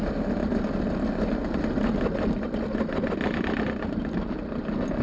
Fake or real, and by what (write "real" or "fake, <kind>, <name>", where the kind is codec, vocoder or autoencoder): real